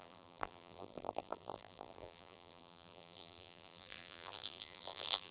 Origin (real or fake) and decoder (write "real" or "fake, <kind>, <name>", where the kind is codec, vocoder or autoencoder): fake, vocoder, BigVGAN v2